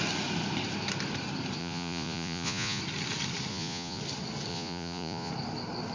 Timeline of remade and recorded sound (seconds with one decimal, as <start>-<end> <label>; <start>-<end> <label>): 0.0-1.6 recorded; 1.6-2.8 remade; 2.8-3.5 recorded; 3.5-4.0 remade; 4.0-4.5 recorded; 4.5-5.3 remade; 5.3-5.9 recorded